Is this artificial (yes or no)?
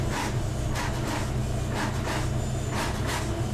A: no